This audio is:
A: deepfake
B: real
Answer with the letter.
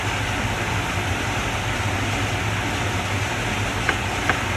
B